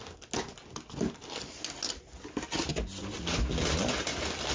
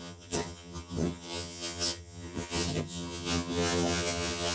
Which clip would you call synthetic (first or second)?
second